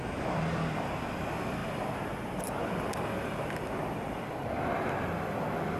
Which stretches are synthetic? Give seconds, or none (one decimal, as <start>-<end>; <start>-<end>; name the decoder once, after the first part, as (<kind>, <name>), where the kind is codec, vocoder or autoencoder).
none